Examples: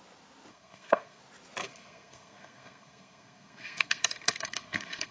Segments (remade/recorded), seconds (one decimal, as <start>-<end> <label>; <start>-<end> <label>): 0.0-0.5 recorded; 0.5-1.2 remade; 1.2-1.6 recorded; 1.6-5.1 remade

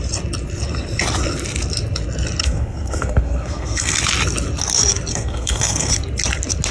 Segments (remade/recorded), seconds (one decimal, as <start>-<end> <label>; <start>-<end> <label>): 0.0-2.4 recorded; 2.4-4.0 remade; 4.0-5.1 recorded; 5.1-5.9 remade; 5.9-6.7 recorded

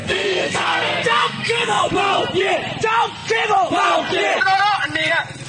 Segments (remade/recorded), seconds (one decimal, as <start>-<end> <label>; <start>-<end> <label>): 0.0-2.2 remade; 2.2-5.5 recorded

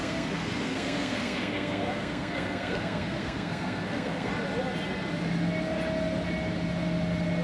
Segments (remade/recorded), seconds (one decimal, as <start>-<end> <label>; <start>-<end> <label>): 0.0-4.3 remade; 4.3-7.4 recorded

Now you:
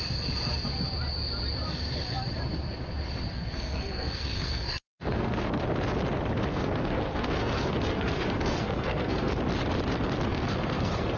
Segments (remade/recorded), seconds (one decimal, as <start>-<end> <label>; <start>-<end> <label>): 0.0-3.3 recorded; 3.3-5.6 remade; 5.6-6.5 recorded; 6.5-9.3 remade; 9.3-10.3 recorded; 10.3-11.2 remade

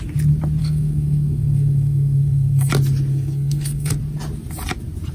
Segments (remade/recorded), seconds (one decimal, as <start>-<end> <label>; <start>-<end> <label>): 0.0-0.6 recorded; 0.6-2.7 remade; 2.7-3.1 recorded; 3.1-3.9 remade; 3.9-5.1 recorded